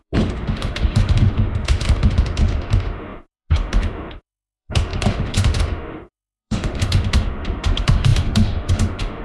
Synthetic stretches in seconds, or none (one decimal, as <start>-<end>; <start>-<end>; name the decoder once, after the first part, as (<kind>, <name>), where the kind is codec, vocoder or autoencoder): 0.0-9.2 (autoencoder, DAC-VAE)